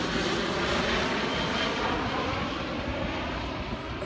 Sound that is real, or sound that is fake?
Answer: real